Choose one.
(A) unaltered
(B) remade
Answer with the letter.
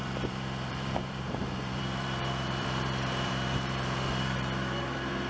B